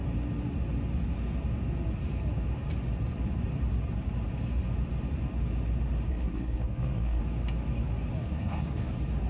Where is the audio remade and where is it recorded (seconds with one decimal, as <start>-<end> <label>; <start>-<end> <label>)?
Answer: 0.0-6.1 recorded; 6.1-7.2 remade; 7.2-8.2 recorded; 8.2-8.9 remade; 8.9-9.3 recorded